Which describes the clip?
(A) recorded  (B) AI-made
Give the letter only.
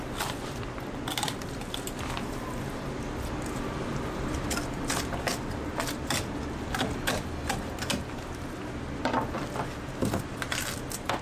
A